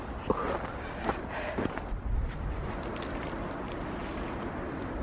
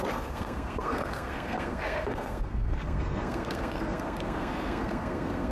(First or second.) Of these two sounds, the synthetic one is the second